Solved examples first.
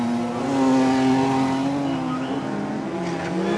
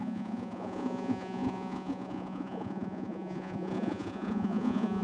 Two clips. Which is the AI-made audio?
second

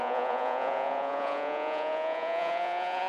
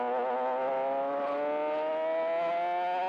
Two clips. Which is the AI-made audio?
first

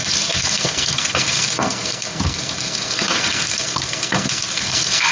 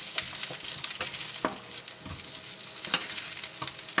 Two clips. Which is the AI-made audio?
first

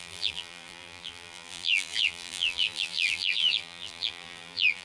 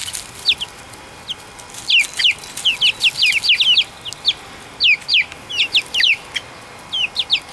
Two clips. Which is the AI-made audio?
first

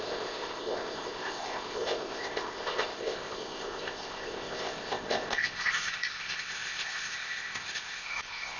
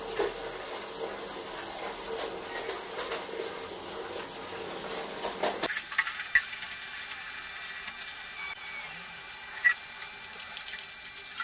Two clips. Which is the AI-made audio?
first